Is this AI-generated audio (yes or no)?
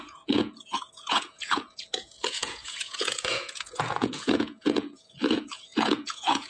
yes